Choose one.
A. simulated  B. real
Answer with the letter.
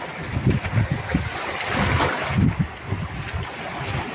B